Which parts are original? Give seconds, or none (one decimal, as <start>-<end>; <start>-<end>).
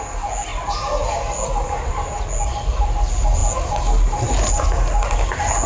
0.0-5.7